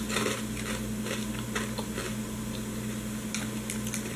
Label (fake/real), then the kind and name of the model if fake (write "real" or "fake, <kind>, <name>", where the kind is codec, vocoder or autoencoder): real